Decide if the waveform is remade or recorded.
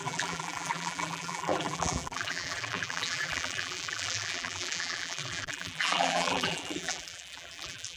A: remade